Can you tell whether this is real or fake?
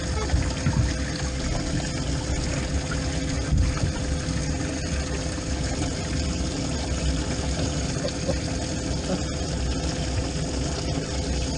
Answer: real